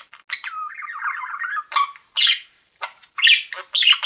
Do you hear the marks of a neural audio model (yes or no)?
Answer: no